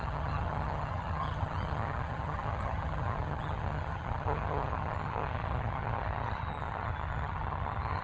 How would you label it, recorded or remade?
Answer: remade